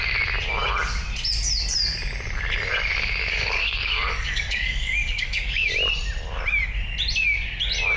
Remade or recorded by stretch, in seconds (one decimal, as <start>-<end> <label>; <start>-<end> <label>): 0.0-3.2 recorded; 3.2-5.7 remade; 5.7-8.0 recorded

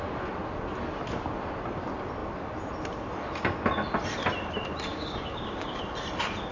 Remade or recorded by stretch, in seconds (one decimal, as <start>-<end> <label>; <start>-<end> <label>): 0.0-4.9 recorded; 4.9-5.8 remade; 5.8-6.5 recorded

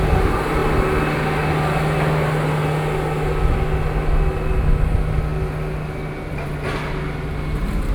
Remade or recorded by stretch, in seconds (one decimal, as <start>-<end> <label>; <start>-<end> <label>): 0.0-7.9 recorded

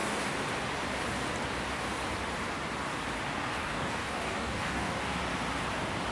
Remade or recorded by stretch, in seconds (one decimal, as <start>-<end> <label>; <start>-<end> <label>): 0.0-3.5 recorded; 3.5-5.2 remade; 5.2-6.1 recorded

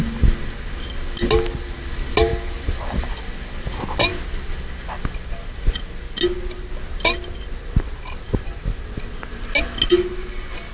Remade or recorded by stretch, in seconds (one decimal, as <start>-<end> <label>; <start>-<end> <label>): 0.0-10.7 recorded

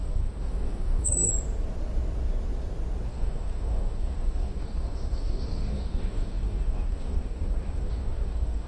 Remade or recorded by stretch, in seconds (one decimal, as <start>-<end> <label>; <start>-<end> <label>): 0.0-1.3 remade; 1.3-3.1 recorded; 3.1-8.7 remade

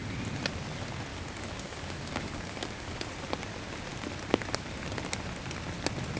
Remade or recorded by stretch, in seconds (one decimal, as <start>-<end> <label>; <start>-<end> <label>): 0.0-1.1 recorded; 1.1-3.1 remade; 3.1-6.2 recorded